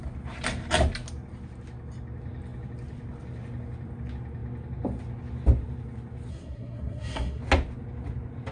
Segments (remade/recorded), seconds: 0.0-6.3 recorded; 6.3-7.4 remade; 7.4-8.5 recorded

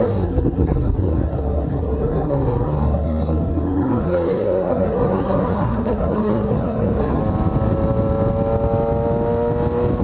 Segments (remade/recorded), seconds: 0.0-7.2 remade; 7.2-10.0 recorded